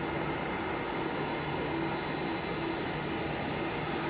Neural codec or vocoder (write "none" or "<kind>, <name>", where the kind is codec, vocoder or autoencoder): none